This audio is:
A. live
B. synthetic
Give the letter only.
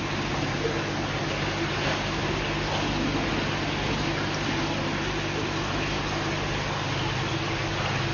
A